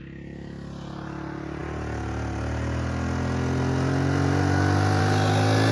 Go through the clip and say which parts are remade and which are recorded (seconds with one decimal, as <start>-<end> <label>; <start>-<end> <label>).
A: 0.0-5.7 recorded